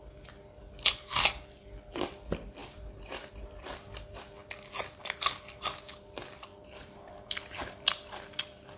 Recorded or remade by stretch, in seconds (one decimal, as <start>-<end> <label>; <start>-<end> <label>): 0.0-2.6 recorded; 2.6-3.3 remade; 3.3-8.8 recorded